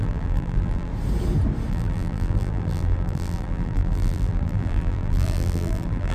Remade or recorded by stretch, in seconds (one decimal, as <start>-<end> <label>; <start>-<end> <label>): 0.0-0.9 remade; 0.9-1.7 recorded; 1.7-6.1 remade